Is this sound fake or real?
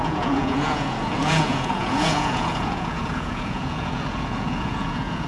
fake